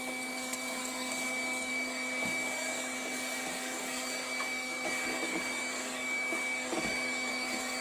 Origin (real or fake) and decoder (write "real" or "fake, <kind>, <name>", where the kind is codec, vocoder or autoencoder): fake, codec, DAC